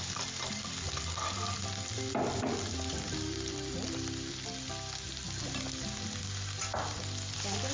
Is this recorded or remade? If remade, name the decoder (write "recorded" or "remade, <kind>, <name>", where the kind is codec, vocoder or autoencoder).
recorded